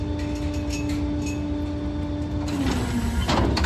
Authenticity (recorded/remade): recorded